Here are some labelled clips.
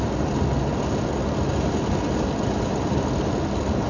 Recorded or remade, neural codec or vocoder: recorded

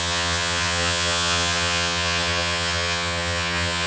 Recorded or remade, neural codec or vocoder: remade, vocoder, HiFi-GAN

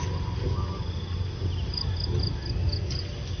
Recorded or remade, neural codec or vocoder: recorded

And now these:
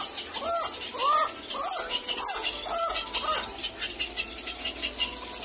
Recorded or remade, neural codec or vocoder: recorded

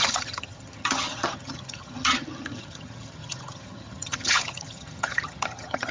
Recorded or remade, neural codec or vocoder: remade, vocoder, HiFi-GAN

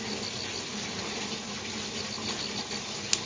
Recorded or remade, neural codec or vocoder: recorded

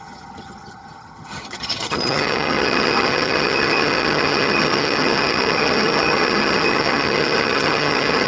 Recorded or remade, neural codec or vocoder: remade, vocoder, HiFi-GAN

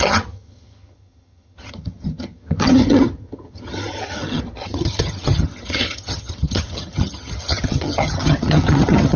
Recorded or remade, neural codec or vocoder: remade, vocoder, HiFi-GAN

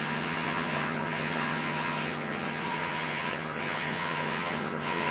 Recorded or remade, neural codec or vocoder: remade, vocoder, HiFi-GAN